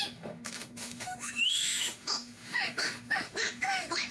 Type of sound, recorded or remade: remade